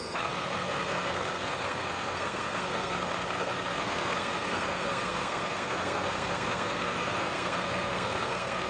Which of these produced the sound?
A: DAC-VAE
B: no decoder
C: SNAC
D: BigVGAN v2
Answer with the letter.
C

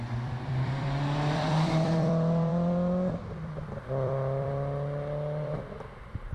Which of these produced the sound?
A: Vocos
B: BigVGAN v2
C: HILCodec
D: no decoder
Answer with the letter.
B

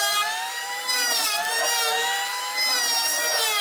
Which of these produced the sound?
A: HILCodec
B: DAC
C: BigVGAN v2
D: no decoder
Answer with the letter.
C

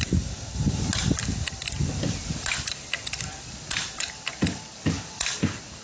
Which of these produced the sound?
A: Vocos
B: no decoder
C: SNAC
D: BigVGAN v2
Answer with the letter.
B